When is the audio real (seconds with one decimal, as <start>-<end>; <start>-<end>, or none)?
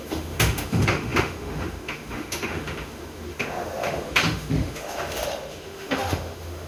none